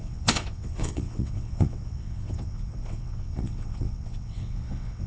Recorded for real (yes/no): no